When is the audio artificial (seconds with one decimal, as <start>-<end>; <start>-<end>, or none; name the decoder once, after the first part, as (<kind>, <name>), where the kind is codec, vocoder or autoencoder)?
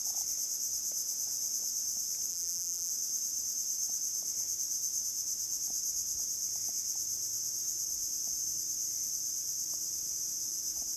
2.3-2.9 (vocoder, BigVGAN v2)